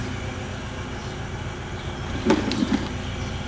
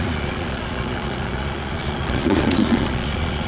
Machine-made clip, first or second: second